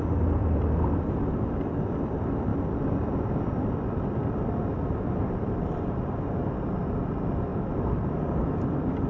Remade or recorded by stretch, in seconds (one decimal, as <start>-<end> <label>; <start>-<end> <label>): 0.0-0.4 remade; 0.4-1.9 recorded; 1.9-7.5 remade; 7.5-9.1 recorded